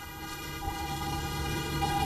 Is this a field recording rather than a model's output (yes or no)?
no